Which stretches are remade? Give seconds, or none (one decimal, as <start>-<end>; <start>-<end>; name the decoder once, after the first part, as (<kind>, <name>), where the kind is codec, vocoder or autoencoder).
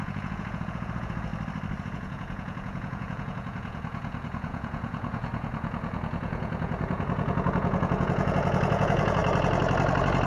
0.0-1.3 (vocoder, Vocos); 1.8-9.2